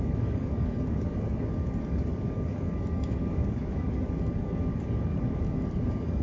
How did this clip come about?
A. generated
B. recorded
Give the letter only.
A